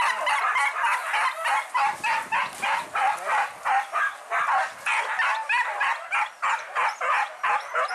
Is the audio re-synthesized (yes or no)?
no